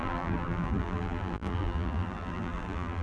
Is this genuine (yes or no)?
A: no